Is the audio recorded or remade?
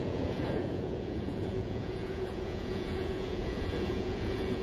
remade